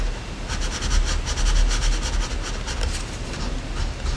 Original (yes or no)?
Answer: yes